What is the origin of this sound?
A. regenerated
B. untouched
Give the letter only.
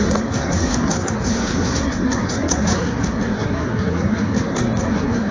A